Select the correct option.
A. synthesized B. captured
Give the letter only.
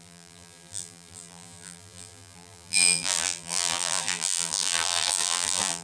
A